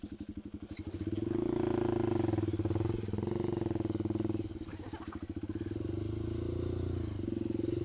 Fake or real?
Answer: real